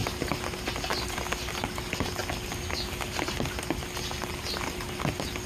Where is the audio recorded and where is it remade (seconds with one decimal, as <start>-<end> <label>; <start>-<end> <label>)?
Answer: 0.0-5.5 recorded